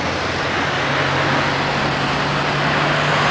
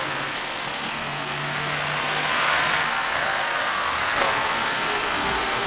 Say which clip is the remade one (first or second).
second